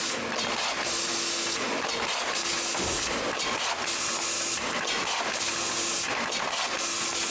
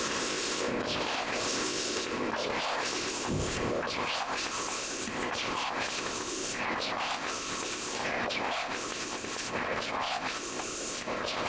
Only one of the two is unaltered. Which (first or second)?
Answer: first